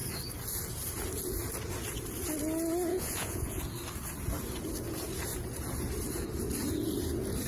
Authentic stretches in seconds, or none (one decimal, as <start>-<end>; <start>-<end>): 0.0-2.9; 3.6-7.5